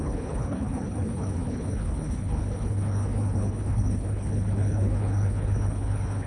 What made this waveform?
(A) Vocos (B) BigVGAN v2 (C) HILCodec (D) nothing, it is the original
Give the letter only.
C